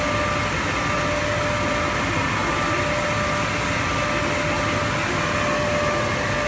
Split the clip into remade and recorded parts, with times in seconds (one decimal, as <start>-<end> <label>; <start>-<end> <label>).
0.0-6.5 recorded